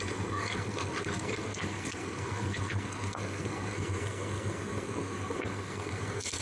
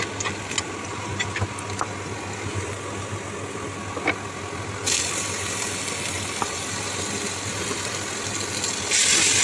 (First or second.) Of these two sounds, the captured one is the second